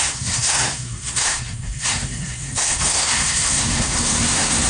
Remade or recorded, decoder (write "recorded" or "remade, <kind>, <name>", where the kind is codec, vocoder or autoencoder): remade, codec, SNAC